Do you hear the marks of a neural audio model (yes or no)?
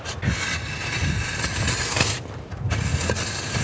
no